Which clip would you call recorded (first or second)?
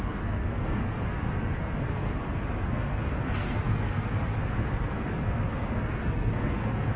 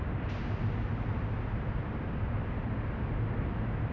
second